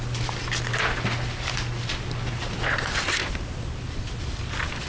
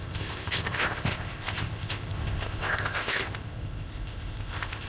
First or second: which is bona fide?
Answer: first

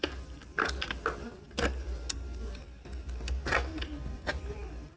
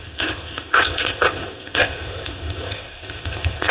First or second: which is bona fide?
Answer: first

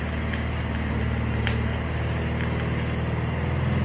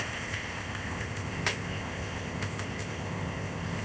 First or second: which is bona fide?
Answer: first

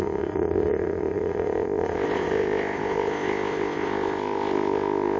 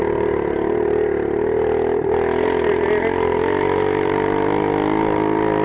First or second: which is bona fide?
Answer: second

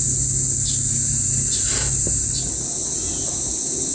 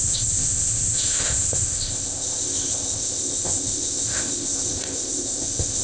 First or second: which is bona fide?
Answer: first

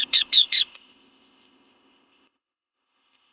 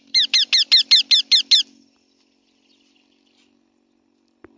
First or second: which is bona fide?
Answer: second